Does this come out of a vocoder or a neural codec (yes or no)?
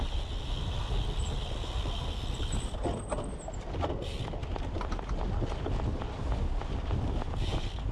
no